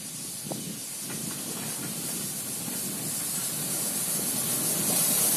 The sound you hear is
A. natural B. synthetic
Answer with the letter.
A